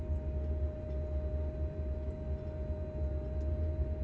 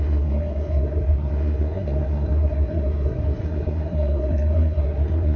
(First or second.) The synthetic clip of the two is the second